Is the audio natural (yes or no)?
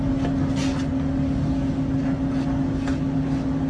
yes